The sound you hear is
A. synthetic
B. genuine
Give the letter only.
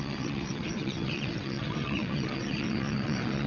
A